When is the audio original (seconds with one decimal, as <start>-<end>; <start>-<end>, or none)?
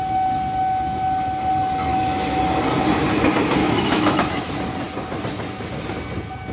0.0-1.9; 2.4-3.6; 4.5-6.5